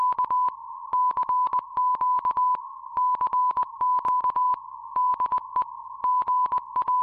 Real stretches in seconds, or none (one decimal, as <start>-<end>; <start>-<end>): 0.0-0.6; 4.2-7.0